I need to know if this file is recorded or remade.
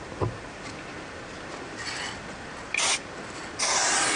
recorded